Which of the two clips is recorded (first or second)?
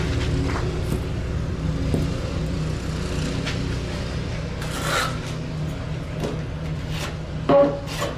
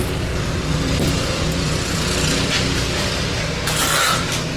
first